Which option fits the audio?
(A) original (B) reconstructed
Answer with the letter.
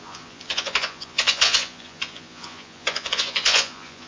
B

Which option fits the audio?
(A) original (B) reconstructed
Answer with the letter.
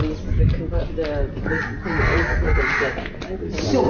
A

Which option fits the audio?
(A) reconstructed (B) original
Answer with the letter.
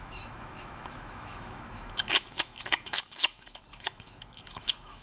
A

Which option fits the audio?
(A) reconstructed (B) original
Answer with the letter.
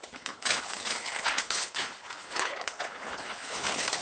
A